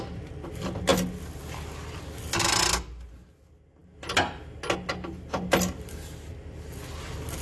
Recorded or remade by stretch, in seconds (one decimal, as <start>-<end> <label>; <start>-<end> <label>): 0.0-7.4 recorded